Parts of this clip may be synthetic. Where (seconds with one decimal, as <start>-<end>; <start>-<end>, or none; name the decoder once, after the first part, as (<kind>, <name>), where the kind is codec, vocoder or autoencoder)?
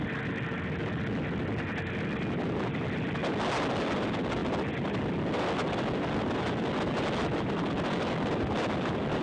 none